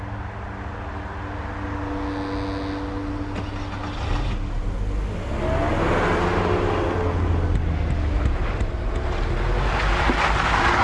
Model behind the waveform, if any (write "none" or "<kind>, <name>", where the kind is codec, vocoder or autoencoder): none